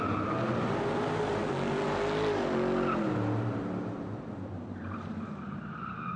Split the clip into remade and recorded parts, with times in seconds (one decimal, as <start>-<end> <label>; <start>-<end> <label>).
0.0-6.2 recorded